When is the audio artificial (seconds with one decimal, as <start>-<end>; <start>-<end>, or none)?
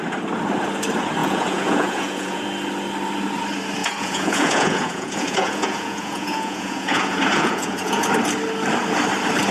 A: 1.2-2.4; 3.8-8.1